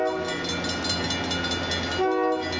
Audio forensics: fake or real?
real